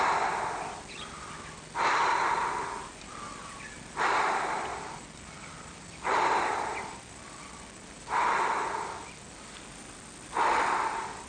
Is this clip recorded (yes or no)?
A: yes